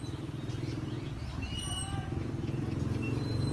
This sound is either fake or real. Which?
real